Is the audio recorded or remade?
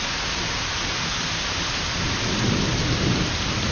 recorded